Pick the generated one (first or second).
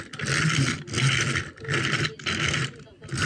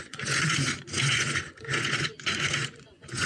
second